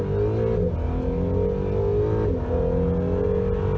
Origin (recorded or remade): recorded